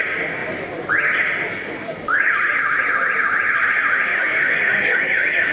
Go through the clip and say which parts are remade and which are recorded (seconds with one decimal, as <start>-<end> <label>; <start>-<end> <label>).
0.0-1.5 recorded; 1.5-2.3 remade; 2.3-4.1 recorded; 4.1-5.5 remade